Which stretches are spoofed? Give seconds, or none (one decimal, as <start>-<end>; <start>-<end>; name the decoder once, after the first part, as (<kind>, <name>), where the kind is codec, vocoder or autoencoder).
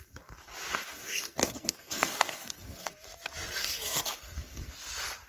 0.9-2.9 (codec, SNAC); 3.6-4.7